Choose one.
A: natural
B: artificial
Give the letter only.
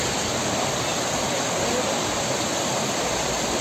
A